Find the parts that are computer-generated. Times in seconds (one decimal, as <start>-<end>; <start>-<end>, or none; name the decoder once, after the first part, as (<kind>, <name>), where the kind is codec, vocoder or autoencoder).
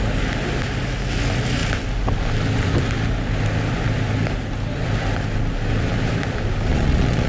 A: 6.7-7.3 (vocoder, Vocos)